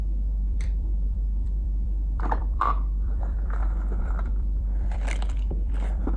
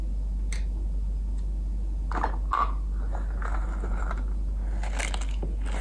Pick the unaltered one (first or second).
second